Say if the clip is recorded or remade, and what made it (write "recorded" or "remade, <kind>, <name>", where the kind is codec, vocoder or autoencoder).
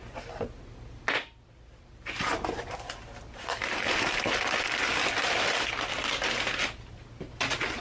recorded